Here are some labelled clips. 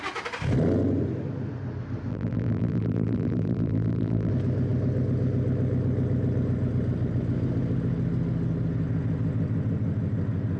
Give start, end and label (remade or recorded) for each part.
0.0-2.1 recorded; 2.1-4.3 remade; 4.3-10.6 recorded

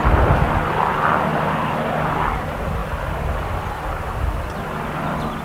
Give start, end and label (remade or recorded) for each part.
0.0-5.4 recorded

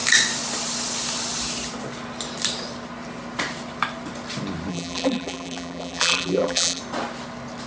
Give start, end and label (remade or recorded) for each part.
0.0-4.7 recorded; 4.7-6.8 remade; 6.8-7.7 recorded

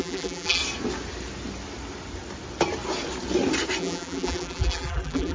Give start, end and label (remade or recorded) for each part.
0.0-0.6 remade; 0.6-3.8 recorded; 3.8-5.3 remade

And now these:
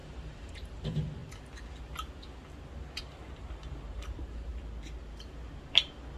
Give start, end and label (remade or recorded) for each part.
0.0-1.2 remade; 1.2-3.0 recorded; 3.0-4.5 remade; 4.5-6.2 recorded

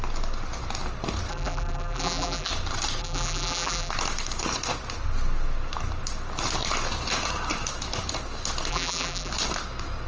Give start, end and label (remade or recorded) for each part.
0.0-1.3 recorded; 1.3-2.5 remade; 2.5-3.0 recorded; 3.0-3.9 remade; 3.9-8.7 recorded; 8.7-9.3 remade; 9.3-10.1 recorded